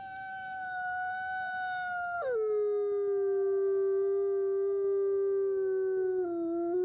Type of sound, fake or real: real